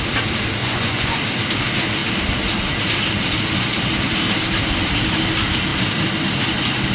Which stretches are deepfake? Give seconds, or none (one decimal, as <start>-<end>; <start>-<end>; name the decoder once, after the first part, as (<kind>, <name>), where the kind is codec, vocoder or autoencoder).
0.6-1.2 (vocoder, Vocos)